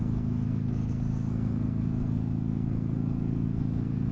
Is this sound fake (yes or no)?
yes